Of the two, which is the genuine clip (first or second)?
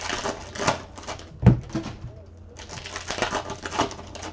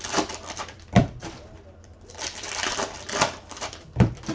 first